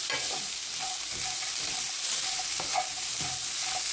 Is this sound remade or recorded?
recorded